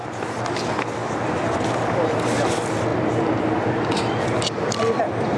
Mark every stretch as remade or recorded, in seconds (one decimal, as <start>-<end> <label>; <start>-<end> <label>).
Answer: 0.0-2.9 recorded; 2.9-5.0 remade; 5.0-5.4 recorded